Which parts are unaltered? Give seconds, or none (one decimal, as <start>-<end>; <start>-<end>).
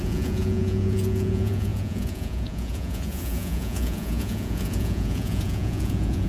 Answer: none